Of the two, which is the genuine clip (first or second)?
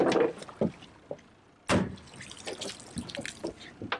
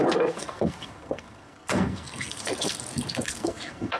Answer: first